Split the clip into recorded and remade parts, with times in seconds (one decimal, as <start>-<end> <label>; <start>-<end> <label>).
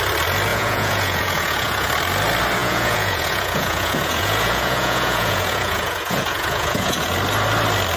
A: 0.0-0.5 recorded; 0.5-1.9 remade; 1.9-2.6 recorded; 2.6-7.1 remade; 7.1-8.0 recorded